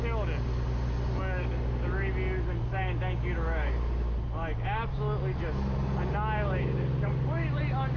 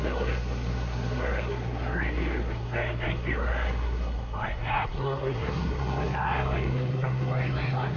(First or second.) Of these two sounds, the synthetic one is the second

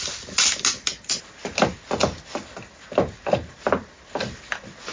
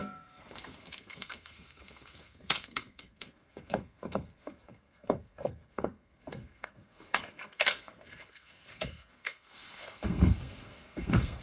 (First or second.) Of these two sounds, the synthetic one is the second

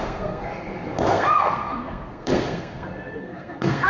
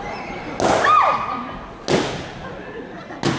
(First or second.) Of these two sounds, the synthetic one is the first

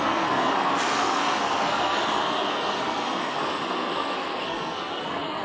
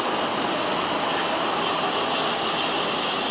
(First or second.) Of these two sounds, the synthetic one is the first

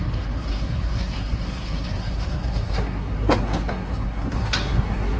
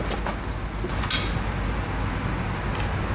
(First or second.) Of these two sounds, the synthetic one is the first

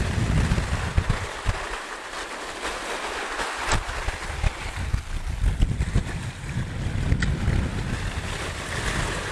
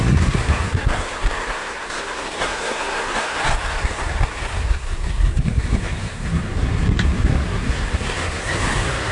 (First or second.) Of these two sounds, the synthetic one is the second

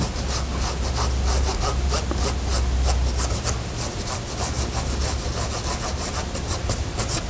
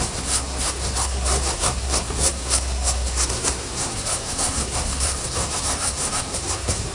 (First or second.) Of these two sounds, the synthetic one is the second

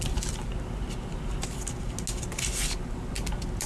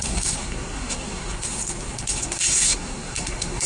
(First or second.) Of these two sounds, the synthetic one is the second